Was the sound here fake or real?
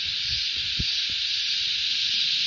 real